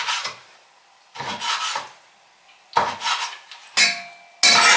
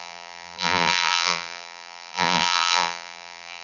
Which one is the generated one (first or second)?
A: second